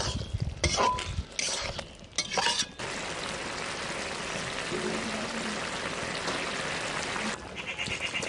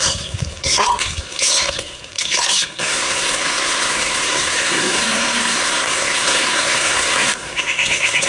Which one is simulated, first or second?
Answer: second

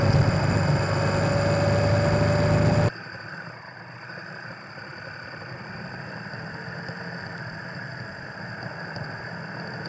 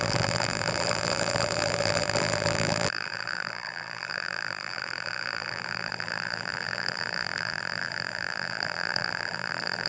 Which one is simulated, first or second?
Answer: second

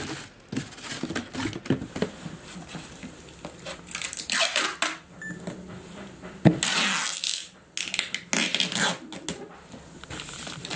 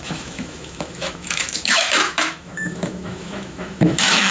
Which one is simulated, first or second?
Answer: second